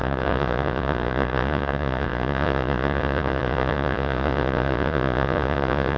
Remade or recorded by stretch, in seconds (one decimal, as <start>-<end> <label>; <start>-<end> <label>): 0.0-6.0 remade